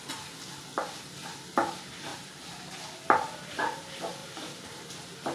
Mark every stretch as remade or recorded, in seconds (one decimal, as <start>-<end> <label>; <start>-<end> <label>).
0.0-2.1 recorded; 2.1-2.6 remade; 2.6-4.2 recorded; 4.2-4.8 remade; 4.8-5.3 recorded